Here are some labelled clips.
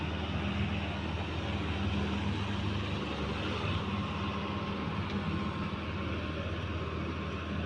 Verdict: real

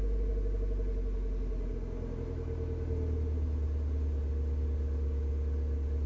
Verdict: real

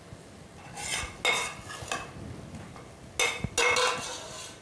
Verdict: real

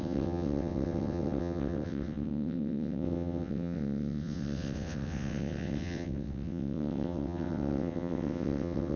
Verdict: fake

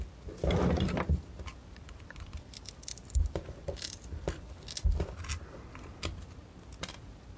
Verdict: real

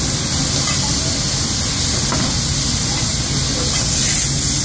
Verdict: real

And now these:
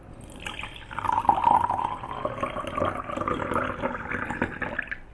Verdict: real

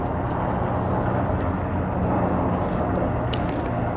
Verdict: real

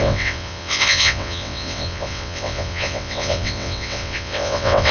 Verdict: fake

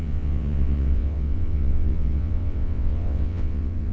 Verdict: fake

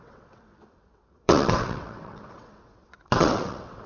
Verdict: fake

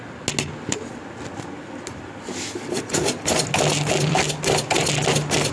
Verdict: real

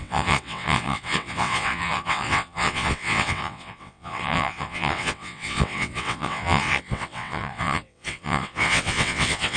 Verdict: fake